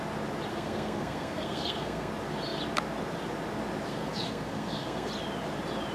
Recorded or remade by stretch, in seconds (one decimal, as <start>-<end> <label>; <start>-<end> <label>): 0.0-0.5 recorded; 0.5-2.1 remade; 2.1-3.9 recorded; 3.9-5.1 remade; 5.1-5.9 recorded